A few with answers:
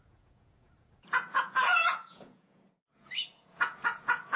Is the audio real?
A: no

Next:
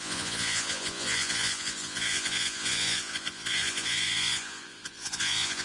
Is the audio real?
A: no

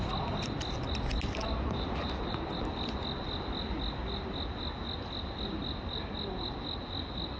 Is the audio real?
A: yes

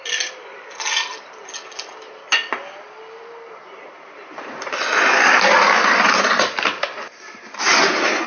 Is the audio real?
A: yes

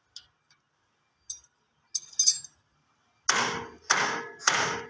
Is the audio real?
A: yes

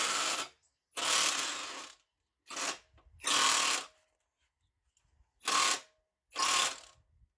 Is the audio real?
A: yes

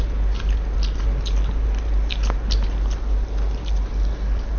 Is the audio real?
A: yes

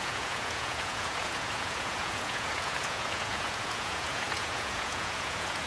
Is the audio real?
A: no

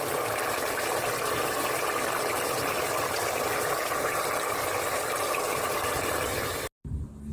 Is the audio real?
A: yes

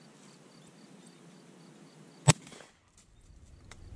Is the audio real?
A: yes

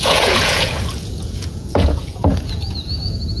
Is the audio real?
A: no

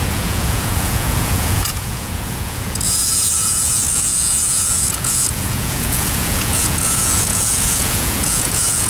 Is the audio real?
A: no